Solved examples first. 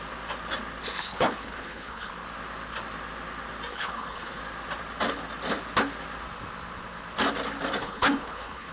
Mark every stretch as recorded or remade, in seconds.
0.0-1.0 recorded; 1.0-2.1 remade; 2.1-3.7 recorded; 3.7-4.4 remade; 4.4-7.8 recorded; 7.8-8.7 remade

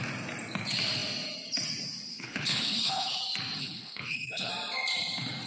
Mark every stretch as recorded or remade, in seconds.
0.0-2.1 recorded; 2.1-3.2 remade; 3.2-3.6 recorded; 3.6-4.5 remade; 4.5-5.5 recorded